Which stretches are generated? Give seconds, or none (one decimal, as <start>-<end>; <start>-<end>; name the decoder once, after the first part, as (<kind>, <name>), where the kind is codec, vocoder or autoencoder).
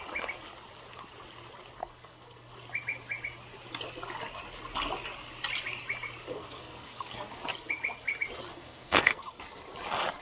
1.8-2.5 (codec, SNAC); 6.3-7.3; 8.5-9.4